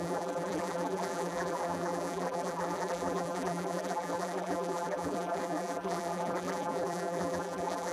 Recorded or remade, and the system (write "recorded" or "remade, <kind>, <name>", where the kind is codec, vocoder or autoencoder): remade, vocoder, BigVGAN v2